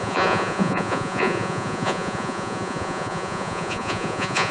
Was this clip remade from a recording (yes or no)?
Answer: yes